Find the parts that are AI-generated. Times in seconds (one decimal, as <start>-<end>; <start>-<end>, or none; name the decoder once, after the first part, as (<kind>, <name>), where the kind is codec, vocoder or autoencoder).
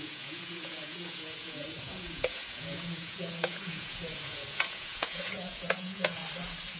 0.0-6.2 (vocoder, Vocos)